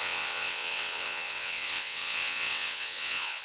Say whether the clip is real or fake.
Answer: fake